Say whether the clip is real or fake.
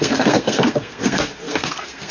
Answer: fake